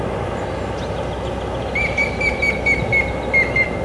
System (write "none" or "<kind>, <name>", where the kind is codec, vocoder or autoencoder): none